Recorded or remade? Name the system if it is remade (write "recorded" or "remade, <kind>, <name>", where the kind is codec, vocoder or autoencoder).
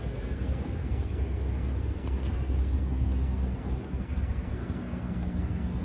remade, codec, SNAC